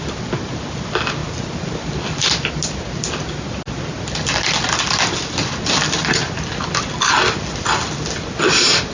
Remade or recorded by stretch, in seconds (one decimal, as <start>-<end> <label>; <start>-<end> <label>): 0.0-8.9 recorded